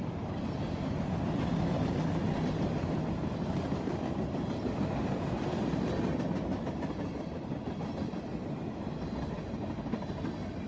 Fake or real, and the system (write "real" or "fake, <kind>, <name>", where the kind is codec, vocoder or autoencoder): real